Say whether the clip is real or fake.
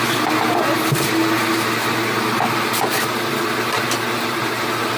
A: fake